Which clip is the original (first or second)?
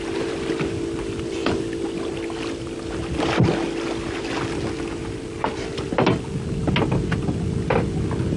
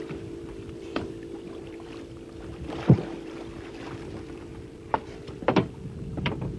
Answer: first